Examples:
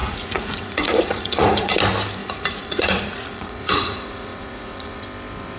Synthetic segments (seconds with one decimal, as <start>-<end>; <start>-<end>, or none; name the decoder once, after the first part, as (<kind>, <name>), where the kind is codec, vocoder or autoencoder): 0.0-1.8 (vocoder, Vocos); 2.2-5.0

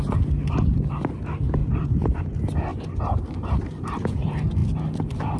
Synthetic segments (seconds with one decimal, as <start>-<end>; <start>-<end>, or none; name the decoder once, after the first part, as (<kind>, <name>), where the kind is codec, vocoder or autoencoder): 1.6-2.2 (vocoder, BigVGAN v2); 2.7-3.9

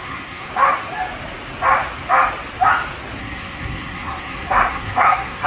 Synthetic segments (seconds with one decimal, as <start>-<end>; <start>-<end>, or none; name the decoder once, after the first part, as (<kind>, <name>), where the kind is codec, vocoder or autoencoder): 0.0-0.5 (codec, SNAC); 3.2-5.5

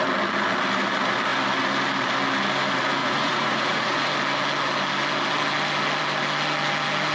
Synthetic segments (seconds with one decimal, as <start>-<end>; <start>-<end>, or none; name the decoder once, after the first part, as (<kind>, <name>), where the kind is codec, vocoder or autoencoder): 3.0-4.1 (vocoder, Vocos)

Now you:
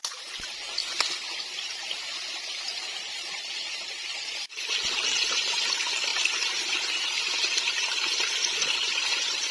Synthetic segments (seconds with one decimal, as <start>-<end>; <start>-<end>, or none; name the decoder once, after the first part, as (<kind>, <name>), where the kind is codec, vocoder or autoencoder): 0.0-0.8 (vocoder, BigVGAN v2); 2.5-9.5

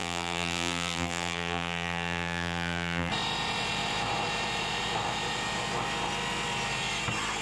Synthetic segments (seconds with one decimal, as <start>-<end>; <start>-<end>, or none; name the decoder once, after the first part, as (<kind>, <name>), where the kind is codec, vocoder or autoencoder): 0.0-3.1 (vocoder, BigVGAN v2)

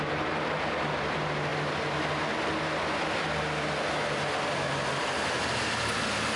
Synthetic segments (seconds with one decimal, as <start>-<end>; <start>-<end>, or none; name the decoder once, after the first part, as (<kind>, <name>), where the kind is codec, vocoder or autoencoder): none

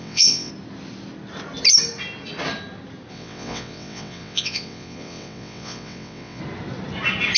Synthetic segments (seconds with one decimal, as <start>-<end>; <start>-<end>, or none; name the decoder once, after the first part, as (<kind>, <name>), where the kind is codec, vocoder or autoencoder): 0.0-0.5 (vocoder, WaveNeXt); 3.1-6.4